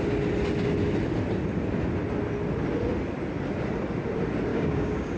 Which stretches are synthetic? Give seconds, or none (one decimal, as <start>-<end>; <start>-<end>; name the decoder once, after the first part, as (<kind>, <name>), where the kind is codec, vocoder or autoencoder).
4.5-5.2 (codec, DAC)